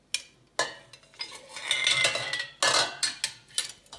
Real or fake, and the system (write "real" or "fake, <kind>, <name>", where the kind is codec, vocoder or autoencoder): real